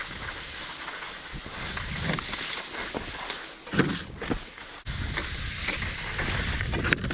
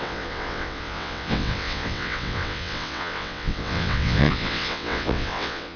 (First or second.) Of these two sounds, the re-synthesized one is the second